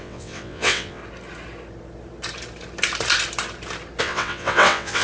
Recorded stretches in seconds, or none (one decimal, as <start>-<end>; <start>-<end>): 1.0-4.0